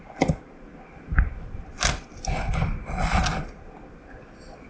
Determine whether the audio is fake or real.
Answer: real